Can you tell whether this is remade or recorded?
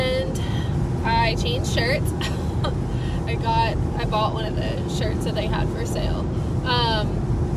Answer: recorded